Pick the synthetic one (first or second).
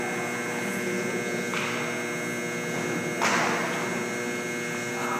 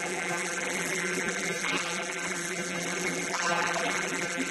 second